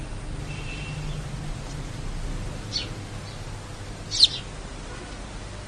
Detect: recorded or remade recorded